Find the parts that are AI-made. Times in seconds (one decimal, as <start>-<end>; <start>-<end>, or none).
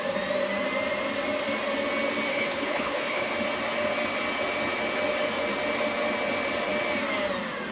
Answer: 2.3-3.3